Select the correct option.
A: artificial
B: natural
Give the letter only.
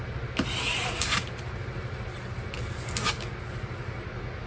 B